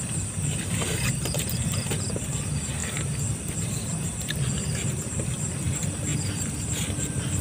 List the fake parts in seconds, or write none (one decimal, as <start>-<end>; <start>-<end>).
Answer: none